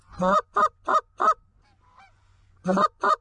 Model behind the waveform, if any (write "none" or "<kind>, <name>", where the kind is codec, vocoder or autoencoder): vocoder, Vocos